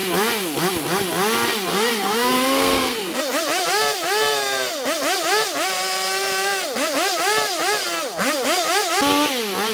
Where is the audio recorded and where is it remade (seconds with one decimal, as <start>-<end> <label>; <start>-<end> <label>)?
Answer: 0.0-1.7 recorded; 1.7-3.2 remade; 3.2-9.7 recorded